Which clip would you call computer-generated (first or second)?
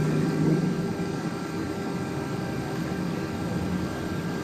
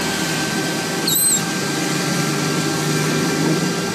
first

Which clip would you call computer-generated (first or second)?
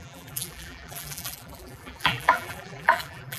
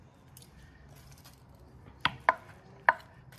first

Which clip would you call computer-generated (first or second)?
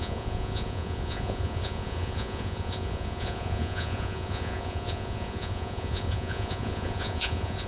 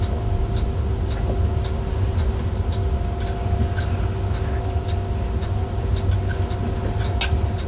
first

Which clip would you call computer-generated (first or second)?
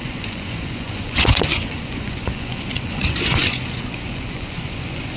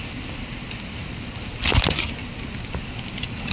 first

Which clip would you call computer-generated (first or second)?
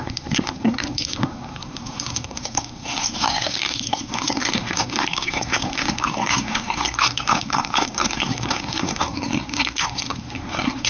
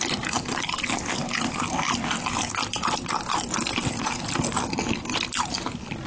first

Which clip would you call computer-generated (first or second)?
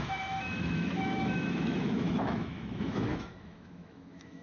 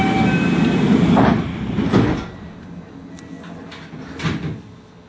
first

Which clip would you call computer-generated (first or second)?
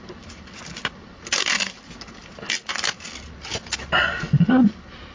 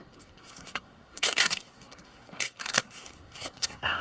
second